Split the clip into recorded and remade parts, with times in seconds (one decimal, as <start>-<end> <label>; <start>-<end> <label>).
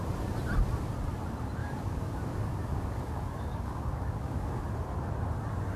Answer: 0.0-1.6 recorded; 1.6-4.6 remade; 4.6-5.8 recorded